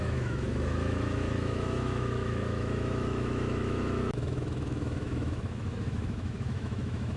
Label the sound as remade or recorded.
remade